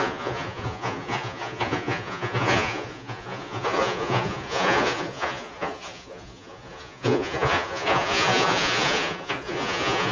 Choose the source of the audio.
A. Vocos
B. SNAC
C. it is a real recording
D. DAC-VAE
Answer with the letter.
A